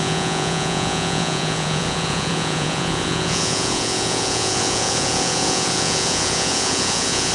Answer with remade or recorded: remade